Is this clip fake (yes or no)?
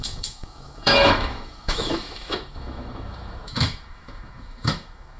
yes